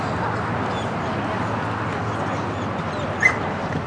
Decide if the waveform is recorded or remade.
recorded